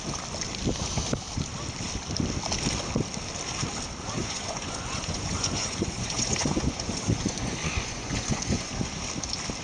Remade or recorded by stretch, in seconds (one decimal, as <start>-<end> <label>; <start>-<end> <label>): 0.0-4.2 recorded; 4.2-8.7 remade; 8.7-9.6 recorded